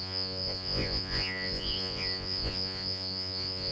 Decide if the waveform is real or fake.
fake